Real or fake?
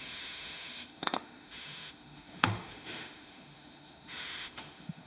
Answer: fake